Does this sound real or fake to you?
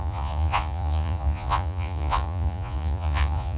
fake